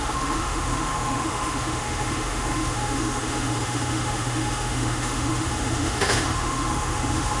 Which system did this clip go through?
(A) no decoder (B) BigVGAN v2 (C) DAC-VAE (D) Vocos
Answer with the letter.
C